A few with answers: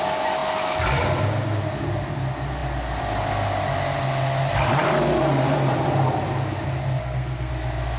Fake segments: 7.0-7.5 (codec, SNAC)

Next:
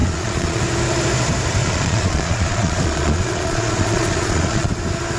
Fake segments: 0.0-0.6 (vocoder, Vocos); 1.6-4.7

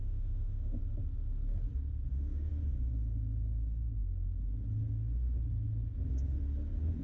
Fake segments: 0.0-0.8 (autoencoder, DAC-VAE); 2.1-2.5

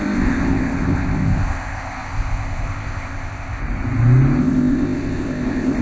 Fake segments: 0.0-3.6 (codec, ZipCodec); 4.4-5.8

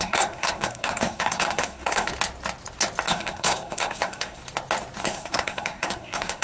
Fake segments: 0.0-2.1 (codec, SNAC); 3.1-4.4; 5.0-6.4